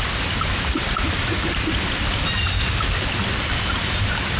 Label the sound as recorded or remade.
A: recorded